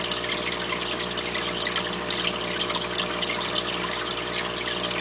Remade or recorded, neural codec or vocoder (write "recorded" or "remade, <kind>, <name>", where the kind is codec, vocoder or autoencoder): recorded